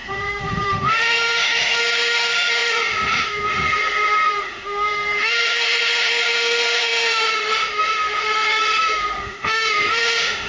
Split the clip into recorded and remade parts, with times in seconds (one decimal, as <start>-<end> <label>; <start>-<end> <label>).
0.0-10.5 remade